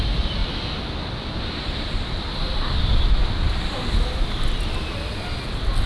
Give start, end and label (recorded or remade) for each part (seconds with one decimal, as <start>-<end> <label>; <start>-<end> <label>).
0.0-5.9 recorded